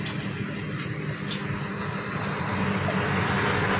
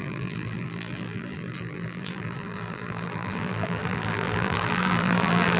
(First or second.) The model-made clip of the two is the second